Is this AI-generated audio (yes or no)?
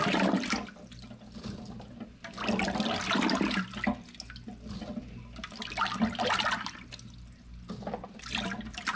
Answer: no